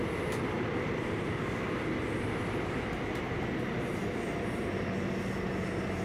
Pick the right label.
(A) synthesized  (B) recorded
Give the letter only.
B